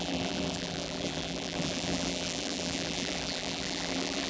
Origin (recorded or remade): remade